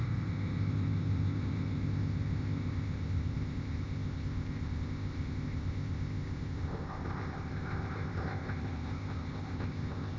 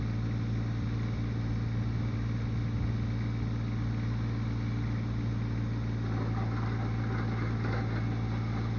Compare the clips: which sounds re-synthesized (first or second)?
first